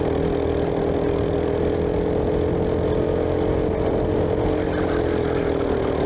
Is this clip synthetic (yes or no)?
no